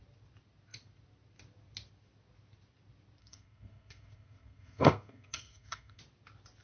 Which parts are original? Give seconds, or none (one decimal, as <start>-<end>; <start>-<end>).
0.0-3.2; 6.0-6.6